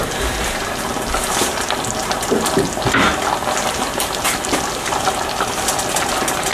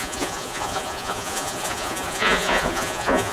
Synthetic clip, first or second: second